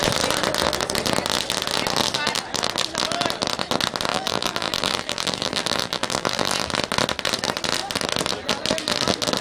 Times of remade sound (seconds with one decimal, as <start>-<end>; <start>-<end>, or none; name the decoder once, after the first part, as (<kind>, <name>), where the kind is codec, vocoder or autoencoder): 4.1-6.7 (vocoder, BigVGAN v2)